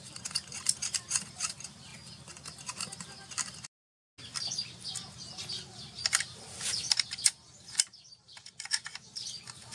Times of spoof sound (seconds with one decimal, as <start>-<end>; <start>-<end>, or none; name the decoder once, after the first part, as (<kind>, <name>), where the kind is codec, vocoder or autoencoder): 0.0-1.9 (vocoder, BigVGAN v2); 6.7-9.7